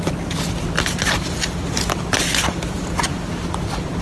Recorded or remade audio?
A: recorded